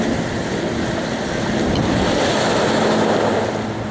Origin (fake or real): real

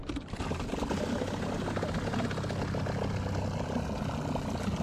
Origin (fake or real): real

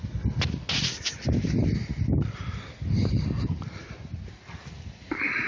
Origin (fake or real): real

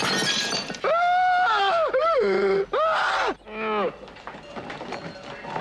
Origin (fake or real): real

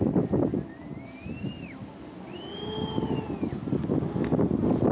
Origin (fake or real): real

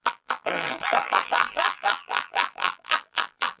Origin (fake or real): fake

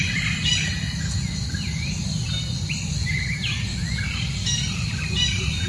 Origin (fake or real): fake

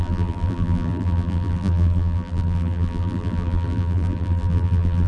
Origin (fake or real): fake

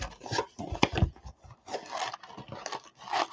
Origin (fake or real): real